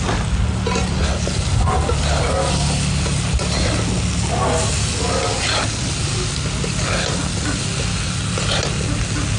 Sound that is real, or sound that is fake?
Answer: real